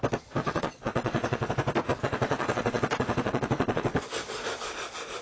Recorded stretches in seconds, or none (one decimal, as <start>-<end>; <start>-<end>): 0.0-0.4; 1.5-1.9; 4.0-5.2